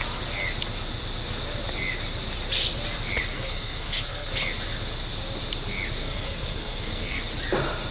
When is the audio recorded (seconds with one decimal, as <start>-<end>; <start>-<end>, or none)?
0.0-3.3; 4.3-6.0; 7.2-7.9